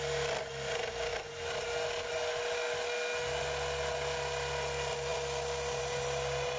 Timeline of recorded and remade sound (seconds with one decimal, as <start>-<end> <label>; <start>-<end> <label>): 0.0-6.6 recorded